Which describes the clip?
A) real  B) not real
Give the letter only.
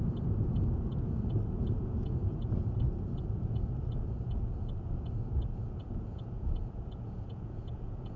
B